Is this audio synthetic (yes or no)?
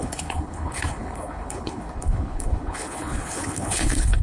yes